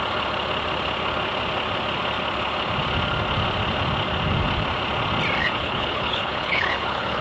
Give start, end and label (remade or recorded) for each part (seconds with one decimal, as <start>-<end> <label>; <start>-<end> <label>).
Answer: 0.0-5.4 recorded; 5.4-7.2 remade